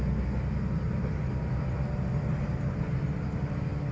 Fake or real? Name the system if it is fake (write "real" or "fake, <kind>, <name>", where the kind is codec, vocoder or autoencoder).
real